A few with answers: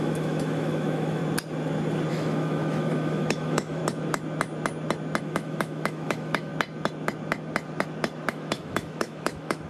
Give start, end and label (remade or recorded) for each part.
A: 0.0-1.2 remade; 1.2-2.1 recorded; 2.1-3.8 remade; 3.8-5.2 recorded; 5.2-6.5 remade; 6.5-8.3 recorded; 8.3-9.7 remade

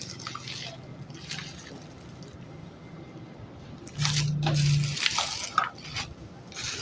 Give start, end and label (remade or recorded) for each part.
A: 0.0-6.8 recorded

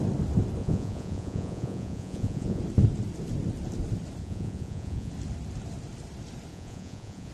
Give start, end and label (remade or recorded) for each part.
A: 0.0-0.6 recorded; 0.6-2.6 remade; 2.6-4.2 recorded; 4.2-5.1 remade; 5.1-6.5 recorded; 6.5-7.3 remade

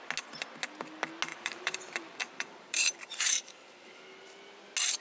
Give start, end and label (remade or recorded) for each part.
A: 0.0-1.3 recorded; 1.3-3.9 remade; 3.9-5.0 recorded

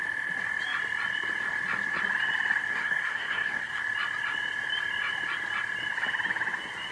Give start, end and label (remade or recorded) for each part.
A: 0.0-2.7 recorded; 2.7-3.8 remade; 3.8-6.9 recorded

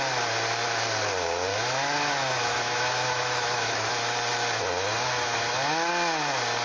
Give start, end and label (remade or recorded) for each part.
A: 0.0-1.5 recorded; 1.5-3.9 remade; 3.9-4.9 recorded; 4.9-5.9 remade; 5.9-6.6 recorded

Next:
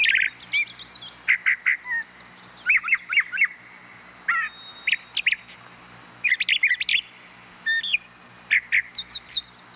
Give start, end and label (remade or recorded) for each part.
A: 0.0-9.8 recorded